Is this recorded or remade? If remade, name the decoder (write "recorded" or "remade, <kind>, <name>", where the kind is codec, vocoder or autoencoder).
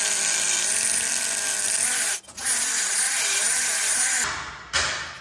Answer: recorded